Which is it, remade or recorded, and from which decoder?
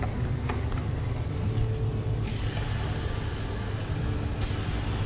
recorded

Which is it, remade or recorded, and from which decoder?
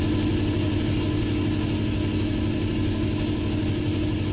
recorded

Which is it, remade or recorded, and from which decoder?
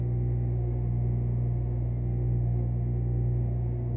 remade, autoencoder, DAC-VAE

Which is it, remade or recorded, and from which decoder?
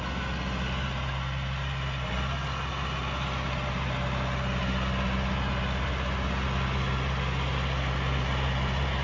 recorded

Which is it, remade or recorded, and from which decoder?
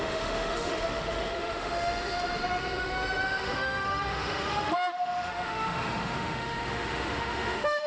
remade, autoencoder, DAC-VAE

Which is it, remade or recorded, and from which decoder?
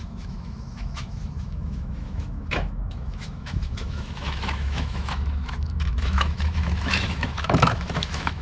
remade, autoencoder, DAC-VAE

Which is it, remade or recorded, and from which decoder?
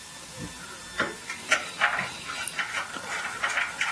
recorded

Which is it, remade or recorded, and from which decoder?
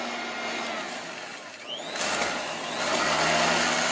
recorded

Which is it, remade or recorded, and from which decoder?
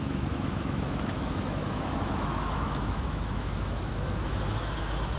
remade, autoencoder, DAC-VAE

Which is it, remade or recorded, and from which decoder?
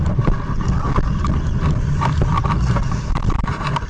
recorded